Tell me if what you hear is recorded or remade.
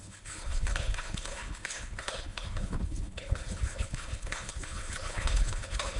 remade